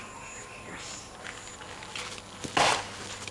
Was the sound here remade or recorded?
recorded